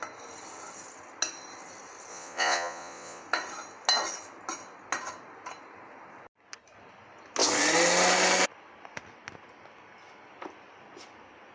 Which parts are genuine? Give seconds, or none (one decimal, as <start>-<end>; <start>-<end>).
0.0-2.1; 3.2-11.5